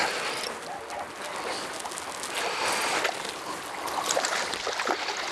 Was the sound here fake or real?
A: real